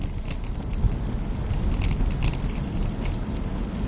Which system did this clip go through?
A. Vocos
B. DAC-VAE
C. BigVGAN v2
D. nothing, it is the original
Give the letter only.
D